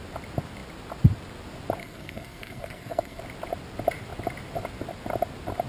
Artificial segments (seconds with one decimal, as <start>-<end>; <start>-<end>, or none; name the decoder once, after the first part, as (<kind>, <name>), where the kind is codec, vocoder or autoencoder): 1.8-3.2 (codec, SNAC)